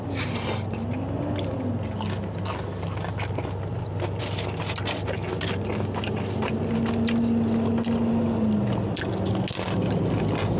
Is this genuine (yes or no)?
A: yes